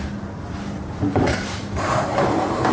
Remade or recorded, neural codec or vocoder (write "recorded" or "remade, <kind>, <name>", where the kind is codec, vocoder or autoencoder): recorded